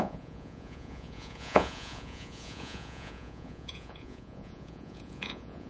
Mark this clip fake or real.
fake